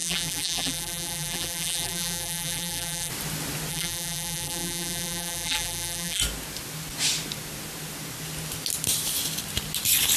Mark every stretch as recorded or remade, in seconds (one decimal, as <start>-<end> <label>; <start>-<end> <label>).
0.0-3.1 remade; 3.1-3.7 recorded; 3.7-6.2 remade; 6.2-10.2 recorded